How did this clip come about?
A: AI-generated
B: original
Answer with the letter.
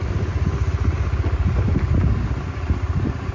B